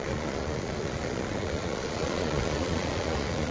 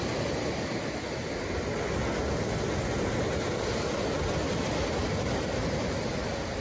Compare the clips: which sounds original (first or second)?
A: second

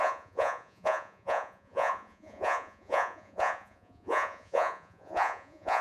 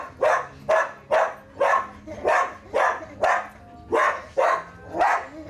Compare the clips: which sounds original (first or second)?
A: second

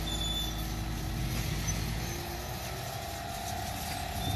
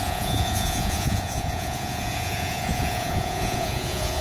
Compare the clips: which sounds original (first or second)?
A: first